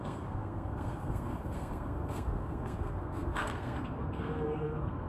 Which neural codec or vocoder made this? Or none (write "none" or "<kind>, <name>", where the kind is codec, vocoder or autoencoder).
codec, SNAC